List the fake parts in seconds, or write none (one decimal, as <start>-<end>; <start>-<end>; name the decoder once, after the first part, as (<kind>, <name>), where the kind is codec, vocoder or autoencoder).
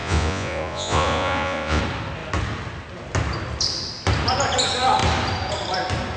0.0-1.8 (vocoder, Vocos)